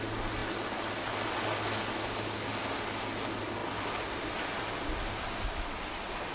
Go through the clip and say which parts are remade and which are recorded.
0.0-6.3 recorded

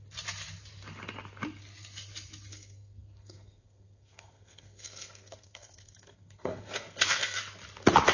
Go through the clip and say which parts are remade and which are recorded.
0.0-2.5 recorded; 2.5-7.4 remade; 7.4-8.1 recorded

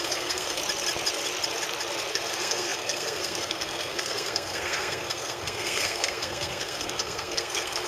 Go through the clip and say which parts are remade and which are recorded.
0.0-0.6 remade; 0.6-2.1 recorded; 2.1-7.9 remade

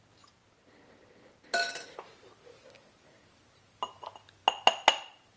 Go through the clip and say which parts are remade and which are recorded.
0.0-5.4 recorded

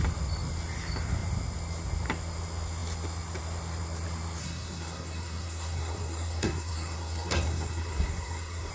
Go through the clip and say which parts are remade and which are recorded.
0.0-4.4 recorded; 4.4-8.7 remade

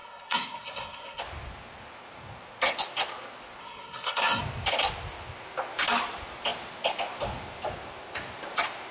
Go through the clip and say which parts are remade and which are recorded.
0.0-1.2 remade; 1.2-3.6 recorded; 3.6-4.4 remade; 4.4-8.9 recorded

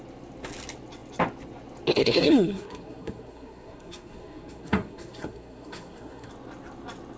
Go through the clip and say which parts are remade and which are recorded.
0.0-2.0 recorded; 2.0-6.3 remade; 6.3-7.2 recorded